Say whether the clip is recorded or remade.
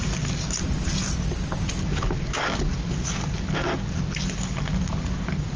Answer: recorded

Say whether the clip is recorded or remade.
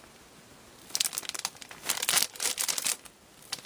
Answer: recorded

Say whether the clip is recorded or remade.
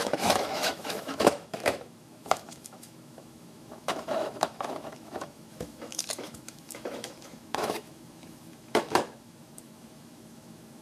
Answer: remade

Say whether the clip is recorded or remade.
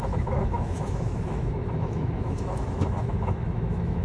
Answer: remade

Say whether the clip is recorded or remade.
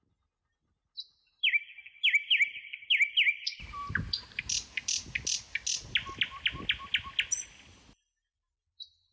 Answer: recorded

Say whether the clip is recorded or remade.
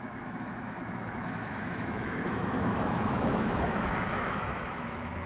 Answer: remade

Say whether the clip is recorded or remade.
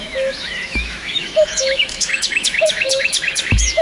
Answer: remade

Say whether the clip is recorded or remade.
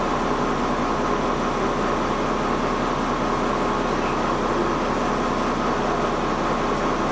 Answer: recorded